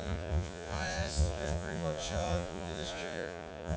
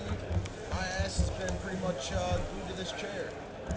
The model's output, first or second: first